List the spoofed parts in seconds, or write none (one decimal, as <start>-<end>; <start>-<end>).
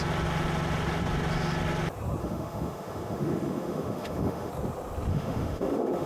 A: 2.2-4.5; 5.1-6.1